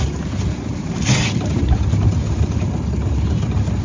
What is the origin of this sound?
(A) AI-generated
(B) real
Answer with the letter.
B